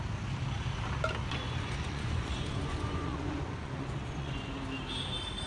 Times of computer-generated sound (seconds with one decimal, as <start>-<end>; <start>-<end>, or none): 1.2-4.5